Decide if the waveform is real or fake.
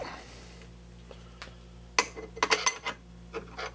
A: real